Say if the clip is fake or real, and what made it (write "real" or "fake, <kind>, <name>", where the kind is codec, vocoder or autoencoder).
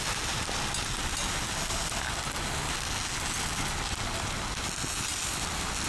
real